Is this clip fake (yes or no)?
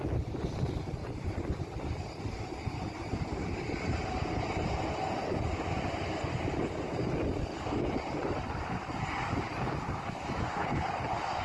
yes